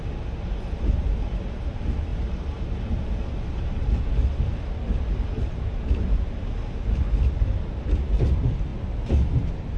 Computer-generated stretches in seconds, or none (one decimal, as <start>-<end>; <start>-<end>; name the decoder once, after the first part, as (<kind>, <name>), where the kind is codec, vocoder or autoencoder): none